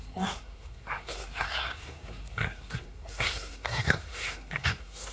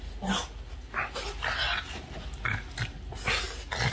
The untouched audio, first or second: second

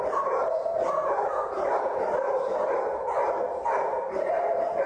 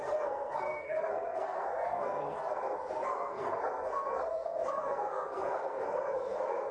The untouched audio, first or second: first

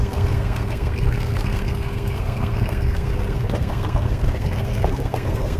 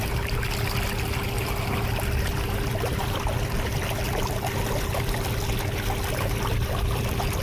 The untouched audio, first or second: second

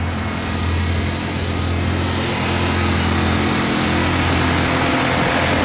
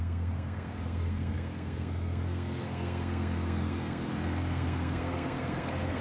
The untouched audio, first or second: first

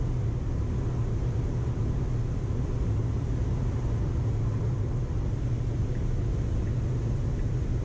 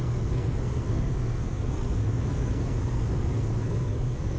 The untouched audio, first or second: first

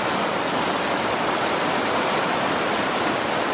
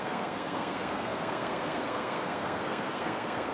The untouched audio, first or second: first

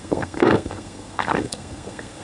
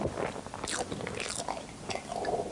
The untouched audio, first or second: second